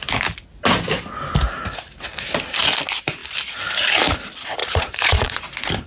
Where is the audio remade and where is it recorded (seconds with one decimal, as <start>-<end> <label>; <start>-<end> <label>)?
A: 0.0-4.6 recorded; 4.6-5.4 remade; 5.4-5.9 recorded